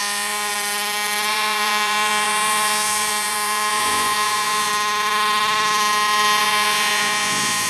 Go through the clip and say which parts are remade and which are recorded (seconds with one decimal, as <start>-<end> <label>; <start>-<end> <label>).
0.0-0.5 remade; 0.5-1.3 recorded; 1.3-4.7 remade; 4.7-6.4 recorded; 6.4-7.7 remade

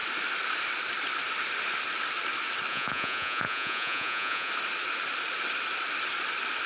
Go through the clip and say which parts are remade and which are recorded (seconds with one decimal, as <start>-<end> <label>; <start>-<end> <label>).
0.0-2.7 recorded; 2.7-4.5 remade; 4.5-6.7 recorded